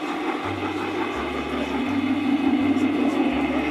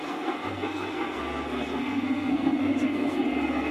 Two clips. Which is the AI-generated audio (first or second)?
second